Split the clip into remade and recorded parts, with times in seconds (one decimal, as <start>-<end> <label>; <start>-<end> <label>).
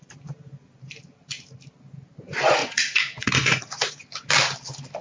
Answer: 0.0-2.6 recorded; 2.6-4.0 remade; 4.0-5.0 recorded